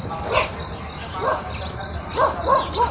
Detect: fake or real real